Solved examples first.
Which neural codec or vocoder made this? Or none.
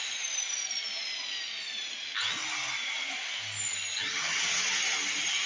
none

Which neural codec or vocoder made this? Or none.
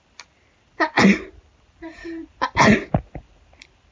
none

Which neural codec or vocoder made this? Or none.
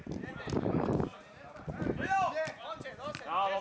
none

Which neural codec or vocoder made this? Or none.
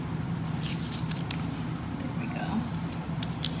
none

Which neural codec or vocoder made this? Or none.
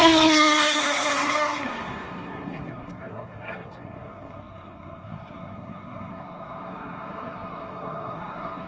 codec, SNAC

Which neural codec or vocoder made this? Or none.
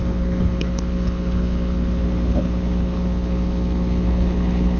codec, HILCodec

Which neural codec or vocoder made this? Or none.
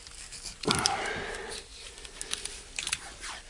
vocoder, BigVGAN v2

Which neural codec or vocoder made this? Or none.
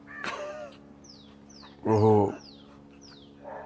none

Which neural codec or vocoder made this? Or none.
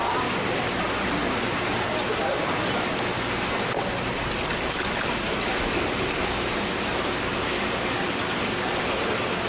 none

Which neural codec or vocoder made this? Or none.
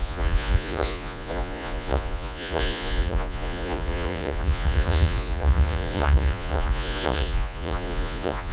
vocoder, Vocos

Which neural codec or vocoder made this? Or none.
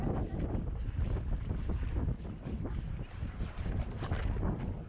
none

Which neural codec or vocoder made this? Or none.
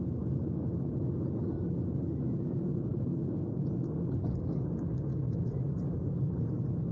none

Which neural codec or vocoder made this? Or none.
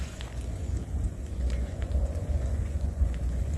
vocoder, Vocos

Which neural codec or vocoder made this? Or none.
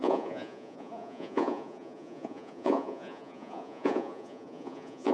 vocoder, Vocos